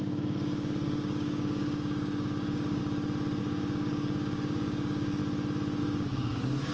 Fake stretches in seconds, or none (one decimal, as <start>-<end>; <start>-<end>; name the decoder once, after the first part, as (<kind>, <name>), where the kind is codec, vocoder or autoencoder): 0.0-2.8 (codec, DAC); 3.4-5.2; 5.8-6.7